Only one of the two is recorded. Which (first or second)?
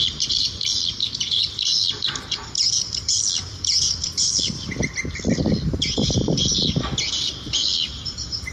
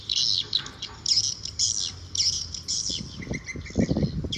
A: second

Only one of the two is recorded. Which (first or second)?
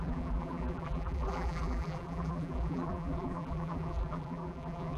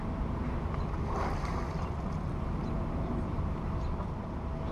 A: second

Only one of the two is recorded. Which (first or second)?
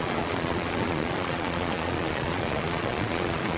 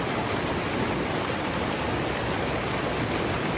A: second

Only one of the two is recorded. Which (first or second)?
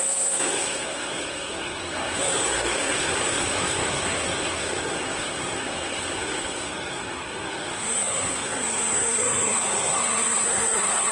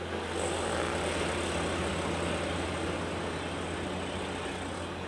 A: second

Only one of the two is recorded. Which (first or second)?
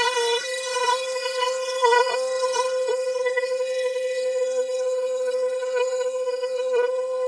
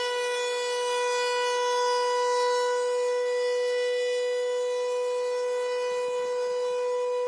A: second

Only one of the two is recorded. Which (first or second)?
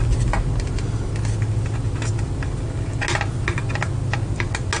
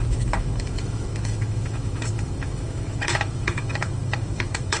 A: first